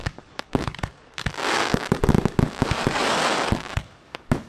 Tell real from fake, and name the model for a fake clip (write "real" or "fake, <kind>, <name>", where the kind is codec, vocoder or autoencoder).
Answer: fake, codec, DAC